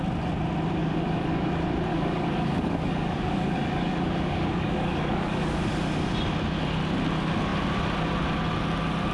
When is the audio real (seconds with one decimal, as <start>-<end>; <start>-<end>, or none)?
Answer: 0.0-0.8; 1.5-1.9; 5.6-9.1